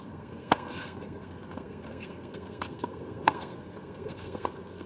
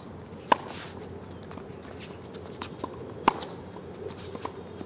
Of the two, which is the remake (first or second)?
first